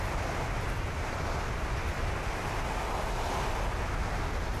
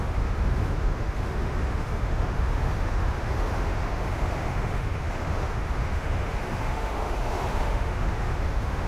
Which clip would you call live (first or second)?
first